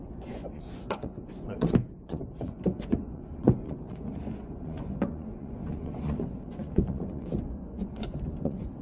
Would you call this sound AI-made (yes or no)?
yes